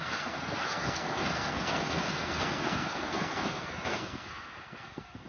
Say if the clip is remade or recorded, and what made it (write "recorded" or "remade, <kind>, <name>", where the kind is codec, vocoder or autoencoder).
remade, codec, SNAC